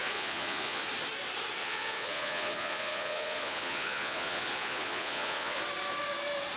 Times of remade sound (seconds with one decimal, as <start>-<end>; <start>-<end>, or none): 0.0-0.8; 1.6-5.6

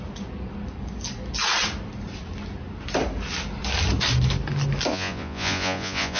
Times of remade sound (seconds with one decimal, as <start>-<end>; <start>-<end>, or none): 4.9-6.2

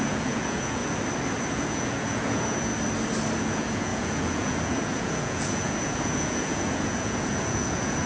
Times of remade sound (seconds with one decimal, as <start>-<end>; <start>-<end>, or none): 0.0-0.8; 1.5-2.7; 3.4-8.1

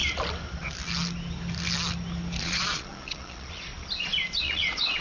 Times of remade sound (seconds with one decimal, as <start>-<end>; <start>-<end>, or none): 2.4-3.7; 4.4-5.0

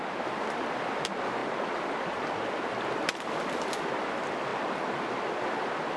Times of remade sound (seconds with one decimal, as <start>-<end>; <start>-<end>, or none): none